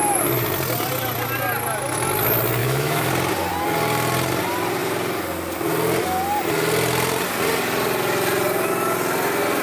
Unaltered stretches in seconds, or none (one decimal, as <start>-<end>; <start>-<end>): 0.0-2.6; 3.1-9.6